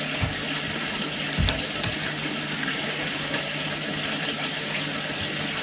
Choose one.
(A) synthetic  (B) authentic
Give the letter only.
B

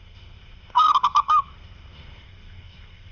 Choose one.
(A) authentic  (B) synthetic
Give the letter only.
B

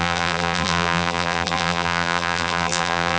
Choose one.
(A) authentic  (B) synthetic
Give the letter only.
B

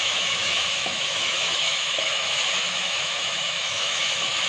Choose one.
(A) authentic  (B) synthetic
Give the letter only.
B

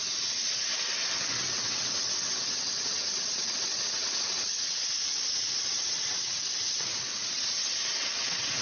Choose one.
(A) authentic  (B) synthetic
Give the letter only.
B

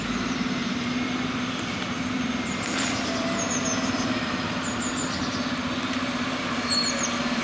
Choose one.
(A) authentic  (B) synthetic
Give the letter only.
B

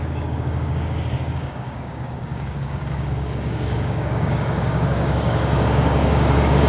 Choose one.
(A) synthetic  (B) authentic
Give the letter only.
A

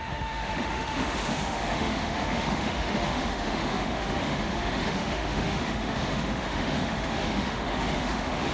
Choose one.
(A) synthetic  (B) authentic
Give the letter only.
A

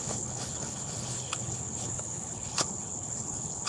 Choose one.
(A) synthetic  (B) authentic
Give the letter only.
A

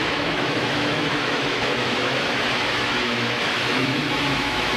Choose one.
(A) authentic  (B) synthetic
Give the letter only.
B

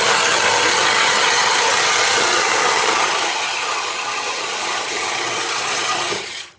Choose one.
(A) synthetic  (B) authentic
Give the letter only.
A